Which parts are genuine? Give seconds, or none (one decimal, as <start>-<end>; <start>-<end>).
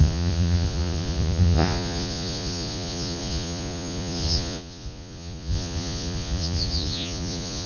none